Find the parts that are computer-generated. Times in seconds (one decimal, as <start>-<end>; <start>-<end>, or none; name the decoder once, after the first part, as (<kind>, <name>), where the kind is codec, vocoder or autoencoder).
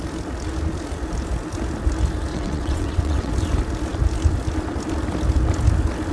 2.3-3.3 (vocoder, WaveNeXt)